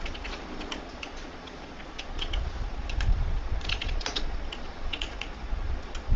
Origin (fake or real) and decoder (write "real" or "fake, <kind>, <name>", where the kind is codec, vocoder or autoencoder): fake, vocoder, Vocos